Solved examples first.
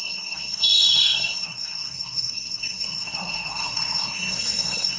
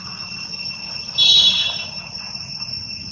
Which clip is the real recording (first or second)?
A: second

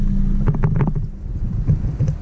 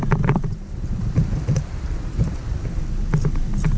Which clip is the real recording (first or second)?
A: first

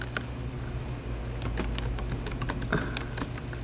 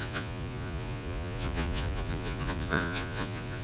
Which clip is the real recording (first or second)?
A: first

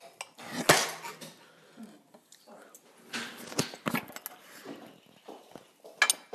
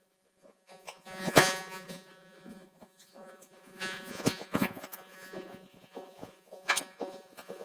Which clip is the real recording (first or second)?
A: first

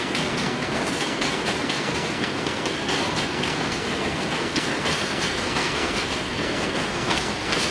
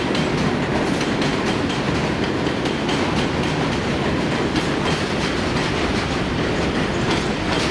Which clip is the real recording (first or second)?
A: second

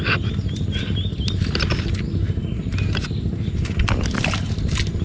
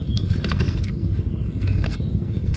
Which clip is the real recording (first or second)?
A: first